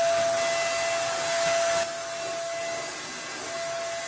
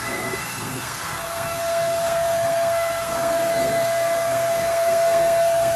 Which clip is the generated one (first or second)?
second